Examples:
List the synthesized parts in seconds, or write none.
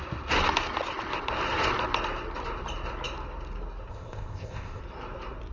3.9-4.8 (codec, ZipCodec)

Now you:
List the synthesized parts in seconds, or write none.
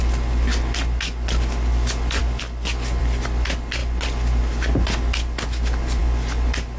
none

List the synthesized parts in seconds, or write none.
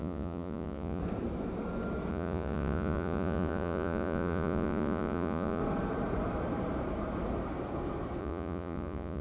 0.0-1.0 (vocoder, Vocos); 2.1-5.6; 8.2-9.2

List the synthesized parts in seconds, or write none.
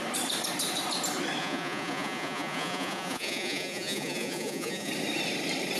1.4-4.9 (vocoder, Vocos)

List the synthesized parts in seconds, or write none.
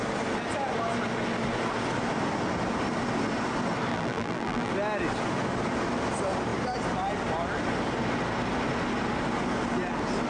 3.9-4.7 (vocoder, BigVGAN v2)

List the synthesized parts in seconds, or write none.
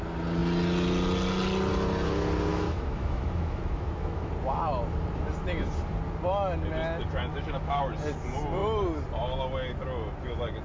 2.5-4.3 (autoencoder, DAC-VAE); 7.3-7.8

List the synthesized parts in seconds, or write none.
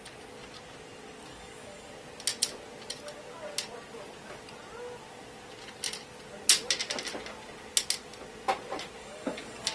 1.3-1.9 (codec, DAC); 9.0-9.7